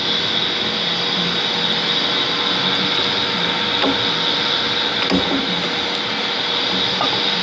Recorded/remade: recorded